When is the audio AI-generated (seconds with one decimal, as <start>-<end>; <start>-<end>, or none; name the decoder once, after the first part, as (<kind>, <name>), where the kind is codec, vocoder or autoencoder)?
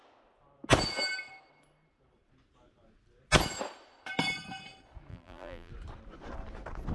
5.1-5.7 (vocoder, BigVGAN v2)